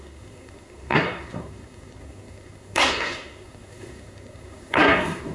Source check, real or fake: fake